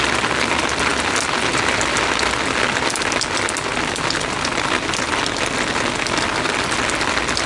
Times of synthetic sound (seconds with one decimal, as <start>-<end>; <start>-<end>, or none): none